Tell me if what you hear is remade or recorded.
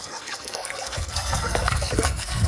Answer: remade